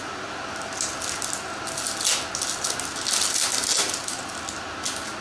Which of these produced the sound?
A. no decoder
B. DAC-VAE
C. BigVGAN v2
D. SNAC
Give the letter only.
A